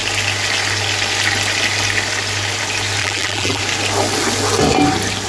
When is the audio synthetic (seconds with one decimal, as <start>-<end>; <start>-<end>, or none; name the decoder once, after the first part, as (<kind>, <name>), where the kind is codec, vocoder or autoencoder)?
3.0-3.6 (vocoder, BigVGAN v2)